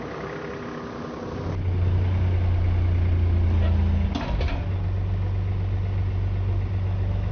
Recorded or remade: recorded